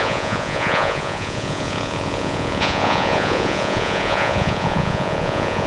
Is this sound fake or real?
fake